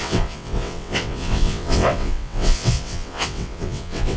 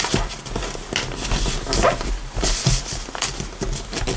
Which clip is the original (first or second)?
second